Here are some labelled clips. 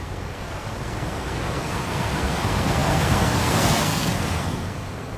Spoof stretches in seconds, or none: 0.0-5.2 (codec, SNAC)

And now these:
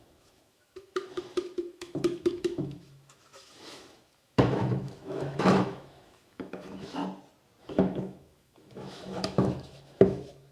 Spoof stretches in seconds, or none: 0.0-7.0 (autoencoder, DAC-VAE); 7.6-10.5

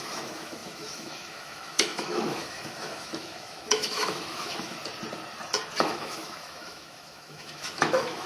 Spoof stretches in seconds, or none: 0.0-4.8 (autoencoder, DAC-VAE); 5.8-8.3

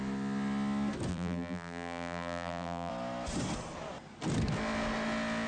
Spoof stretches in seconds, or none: 1.1-2.9 (vocoder, BigVGAN v2)

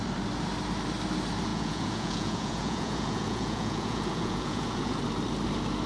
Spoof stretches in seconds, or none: 1.5-5.0 (vocoder, Vocos)